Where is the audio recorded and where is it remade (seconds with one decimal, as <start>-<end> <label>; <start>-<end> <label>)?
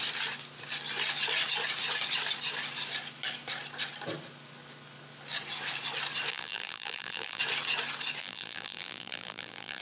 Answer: 0.0-6.3 recorded; 6.3-7.4 remade; 7.4-8.2 recorded; 8.2-9.8 remade